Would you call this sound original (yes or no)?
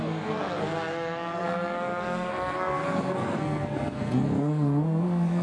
no